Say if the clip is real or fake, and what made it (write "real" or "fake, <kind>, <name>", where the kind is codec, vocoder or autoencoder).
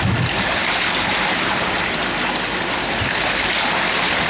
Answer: real